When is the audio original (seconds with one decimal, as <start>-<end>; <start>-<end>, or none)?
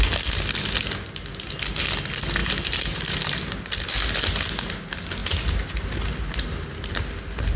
0.0-2.4; 3.1-7.6